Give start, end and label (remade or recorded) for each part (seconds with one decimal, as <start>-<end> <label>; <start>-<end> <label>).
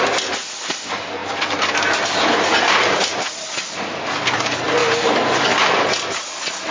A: 0.0-1.2 remade; 1.2-2.4 recorded; 2.4-3.1 remade; 3.1-3.8 recorded; 3.8-4.8 remade; 4.8-6.7 recorded